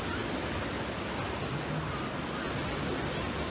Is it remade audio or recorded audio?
recorded